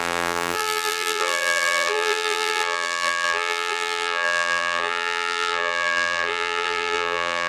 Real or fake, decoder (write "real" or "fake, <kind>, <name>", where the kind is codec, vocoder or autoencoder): fake, vocoder, BigVGAN v2